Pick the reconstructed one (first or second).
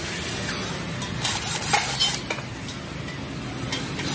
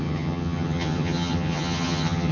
second